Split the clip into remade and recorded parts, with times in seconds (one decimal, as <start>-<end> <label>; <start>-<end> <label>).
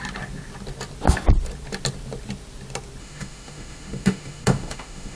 0.0-3.0 recorded; 3.0-5.2 remade